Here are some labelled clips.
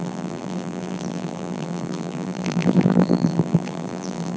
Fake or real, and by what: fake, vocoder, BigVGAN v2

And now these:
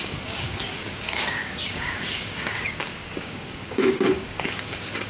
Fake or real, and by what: fake, codec, DAC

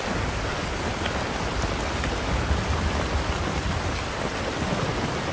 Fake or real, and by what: real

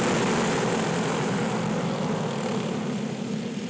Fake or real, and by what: real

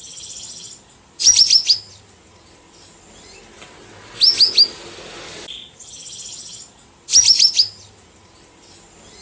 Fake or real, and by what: real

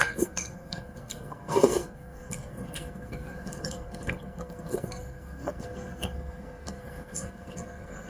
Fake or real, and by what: fake, codec, SNAC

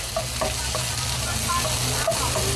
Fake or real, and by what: real